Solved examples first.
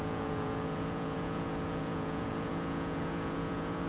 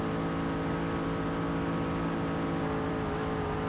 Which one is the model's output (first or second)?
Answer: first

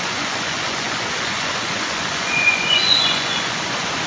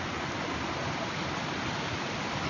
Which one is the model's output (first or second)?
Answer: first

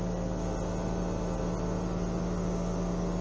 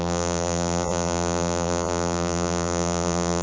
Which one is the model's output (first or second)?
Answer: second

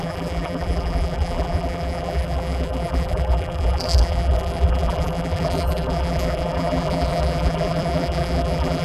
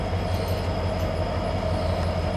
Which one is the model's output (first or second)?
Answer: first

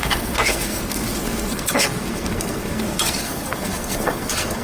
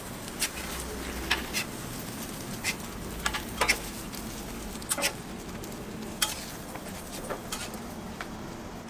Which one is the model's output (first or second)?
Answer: first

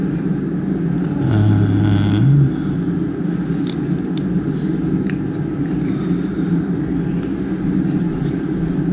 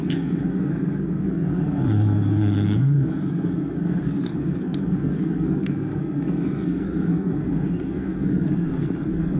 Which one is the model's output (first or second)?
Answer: second